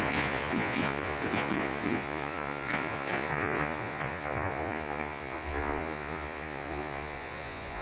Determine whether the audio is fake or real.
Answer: fake